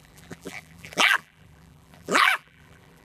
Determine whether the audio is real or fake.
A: fake